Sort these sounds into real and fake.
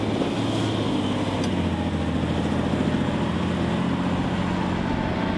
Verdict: real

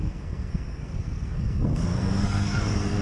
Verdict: fake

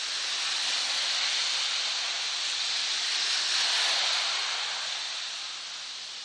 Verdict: real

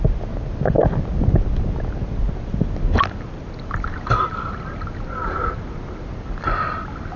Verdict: real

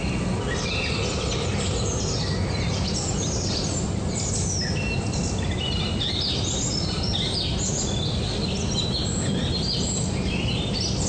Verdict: real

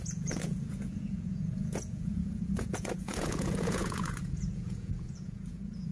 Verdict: fake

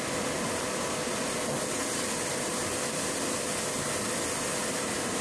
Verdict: real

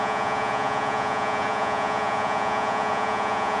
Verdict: fake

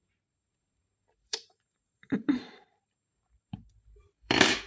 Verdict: fake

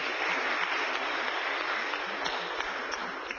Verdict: real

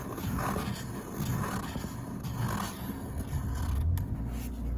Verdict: real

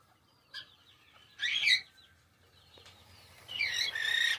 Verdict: fake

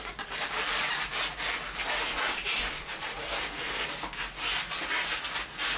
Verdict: real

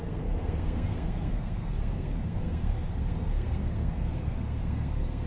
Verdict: fake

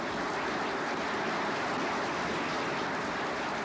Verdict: real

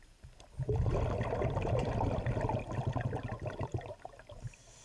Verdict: real